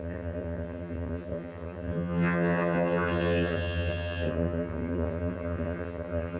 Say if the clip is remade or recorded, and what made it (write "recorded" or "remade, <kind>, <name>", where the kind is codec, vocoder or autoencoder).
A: remade, vocoder, HiFi-GAN